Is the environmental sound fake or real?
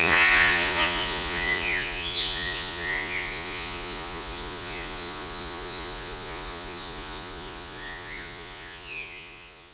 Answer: fake